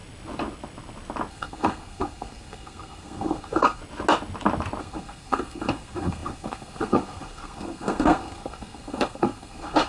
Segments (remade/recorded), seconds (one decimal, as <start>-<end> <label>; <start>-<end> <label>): 0.0-1.3 recorded; 1.3-3.8 remade; 3.8-4.8 recorded; 4.8-9.9 remade